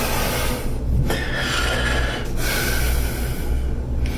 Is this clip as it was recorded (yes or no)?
yes